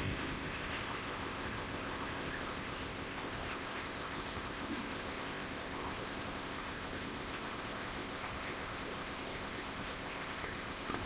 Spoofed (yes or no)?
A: yes